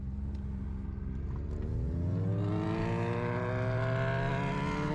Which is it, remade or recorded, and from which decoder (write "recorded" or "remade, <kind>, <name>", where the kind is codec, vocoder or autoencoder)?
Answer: recorded